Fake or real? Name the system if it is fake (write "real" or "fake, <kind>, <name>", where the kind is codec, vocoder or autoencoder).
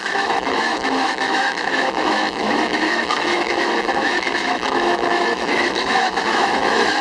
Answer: fake, autoencoder, DAC-VAE